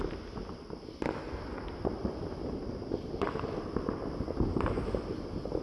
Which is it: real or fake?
real